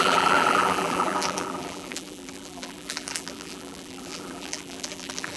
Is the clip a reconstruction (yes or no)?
yes